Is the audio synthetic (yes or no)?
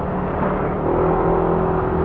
no